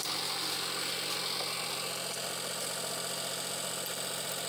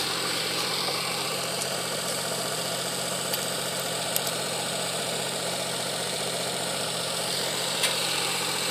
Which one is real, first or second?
first